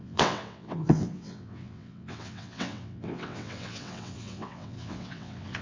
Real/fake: fake